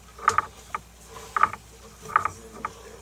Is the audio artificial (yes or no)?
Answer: no